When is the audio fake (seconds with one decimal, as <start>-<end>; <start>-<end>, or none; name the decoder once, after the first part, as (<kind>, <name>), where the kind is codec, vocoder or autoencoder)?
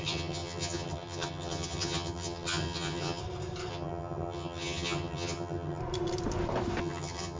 0.0-3.2 (vocoder, HiFi-GAN); 3.7-5.8; 6.8-7.4